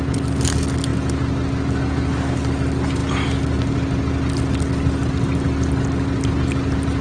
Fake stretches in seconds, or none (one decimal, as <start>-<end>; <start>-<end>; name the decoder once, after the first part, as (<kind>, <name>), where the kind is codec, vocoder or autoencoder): none